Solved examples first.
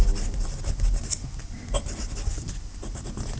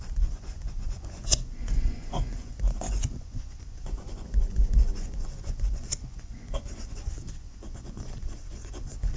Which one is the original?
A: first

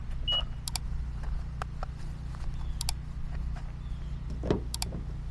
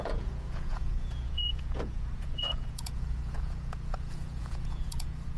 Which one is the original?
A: first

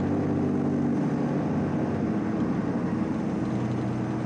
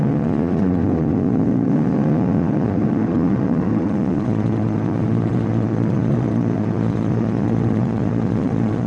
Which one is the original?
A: first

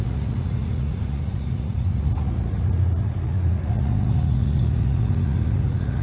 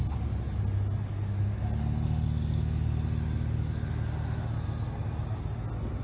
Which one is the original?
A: second